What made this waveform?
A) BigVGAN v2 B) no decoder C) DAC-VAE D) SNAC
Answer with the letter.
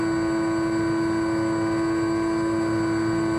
B